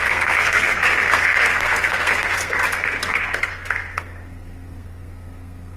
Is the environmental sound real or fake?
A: fake